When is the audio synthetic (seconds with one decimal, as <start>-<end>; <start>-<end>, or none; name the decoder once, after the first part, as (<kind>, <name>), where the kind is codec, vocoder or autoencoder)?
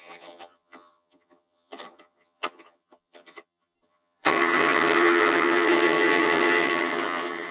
0.0-7.5 (vocoder, HiFi-GAN)